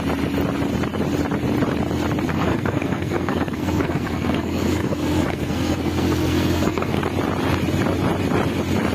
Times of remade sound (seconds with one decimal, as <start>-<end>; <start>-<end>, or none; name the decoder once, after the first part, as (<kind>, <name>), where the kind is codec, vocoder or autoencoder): 2.3-7.0 (codec, SNAC)